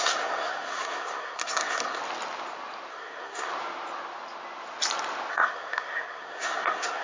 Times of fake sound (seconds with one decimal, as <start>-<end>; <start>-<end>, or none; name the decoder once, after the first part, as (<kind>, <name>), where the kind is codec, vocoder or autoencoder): 0.0-2.0 (codec, SNAC); 2.9-3.5; 5.3-7.0